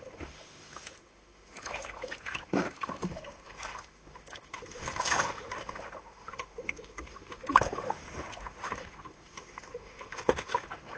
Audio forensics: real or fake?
fake